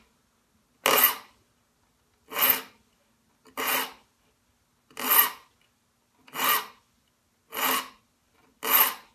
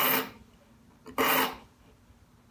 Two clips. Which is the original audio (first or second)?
first